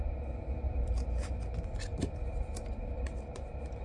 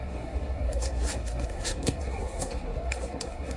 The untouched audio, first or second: first